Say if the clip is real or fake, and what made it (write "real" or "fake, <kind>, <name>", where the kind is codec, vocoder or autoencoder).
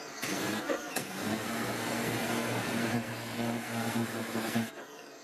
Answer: fake, codec, SNAC